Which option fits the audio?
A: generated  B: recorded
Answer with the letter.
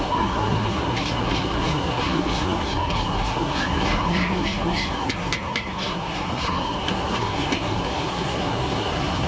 A